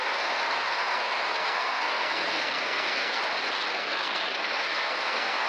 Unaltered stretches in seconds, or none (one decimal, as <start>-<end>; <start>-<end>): 3.2-3.7

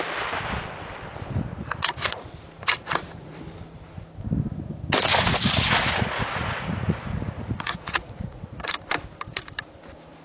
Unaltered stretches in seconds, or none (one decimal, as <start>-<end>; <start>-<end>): 0.0-1.5; 2.2-2.6; 3.4-5.1; 8.8-10.2

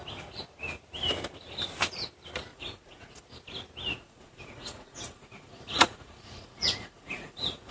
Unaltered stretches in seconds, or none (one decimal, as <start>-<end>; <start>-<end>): 0.0-2.5; 3.2-3.9

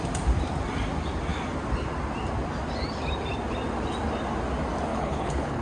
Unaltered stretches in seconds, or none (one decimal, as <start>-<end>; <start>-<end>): 0.0-4.9